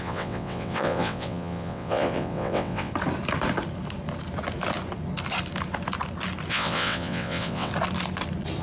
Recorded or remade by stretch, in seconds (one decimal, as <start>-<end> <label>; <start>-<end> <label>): 0.0-2.9 remade; 2.9-6.5 recorded; 6.5-7.7 remade; 7.7-8.6 recorded